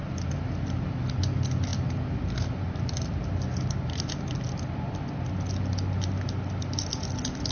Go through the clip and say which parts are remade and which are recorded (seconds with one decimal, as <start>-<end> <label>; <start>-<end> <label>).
0.0-7.5 recorded